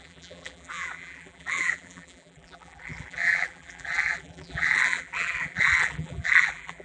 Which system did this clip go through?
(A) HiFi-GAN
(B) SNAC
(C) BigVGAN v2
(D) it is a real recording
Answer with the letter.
C